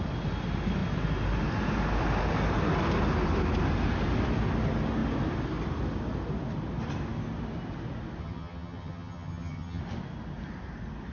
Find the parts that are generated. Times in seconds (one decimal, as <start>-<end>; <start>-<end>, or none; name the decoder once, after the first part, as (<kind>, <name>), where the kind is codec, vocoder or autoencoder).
8.2-9.8 (vocoder, HiFi-GAN)